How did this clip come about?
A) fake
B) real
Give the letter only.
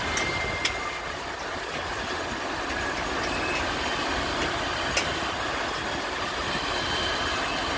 B